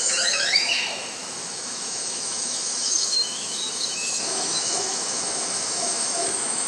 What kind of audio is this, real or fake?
fake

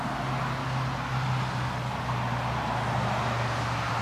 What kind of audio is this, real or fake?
real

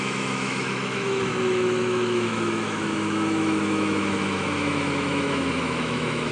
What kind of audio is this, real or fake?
fake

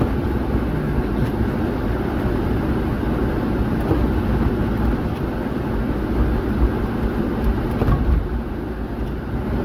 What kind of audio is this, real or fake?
real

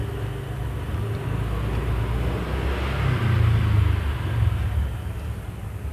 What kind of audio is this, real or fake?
real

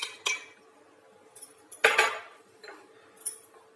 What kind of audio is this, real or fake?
real